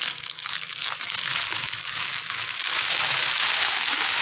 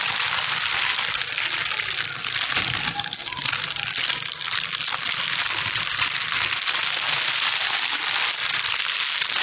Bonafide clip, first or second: second